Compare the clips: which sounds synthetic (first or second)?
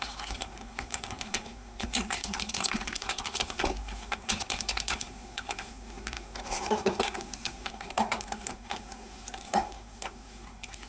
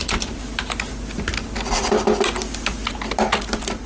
first